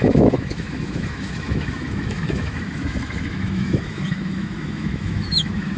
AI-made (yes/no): yes